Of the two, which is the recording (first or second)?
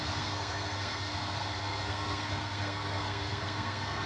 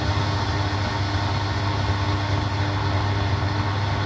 second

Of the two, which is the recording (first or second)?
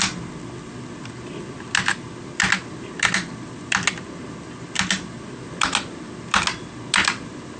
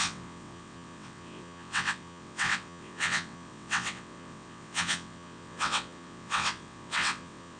first